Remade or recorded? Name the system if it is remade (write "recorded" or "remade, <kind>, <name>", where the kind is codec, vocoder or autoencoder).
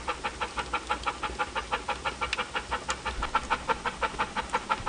recorded